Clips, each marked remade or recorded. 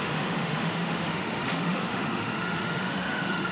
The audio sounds remade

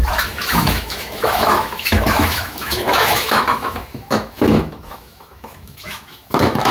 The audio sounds remade